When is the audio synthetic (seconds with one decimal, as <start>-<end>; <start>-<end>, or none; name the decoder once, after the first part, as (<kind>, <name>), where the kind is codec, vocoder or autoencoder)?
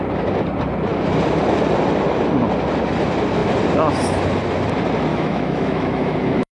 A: 5.1-6.5 (autoencoder, DAC-VAE)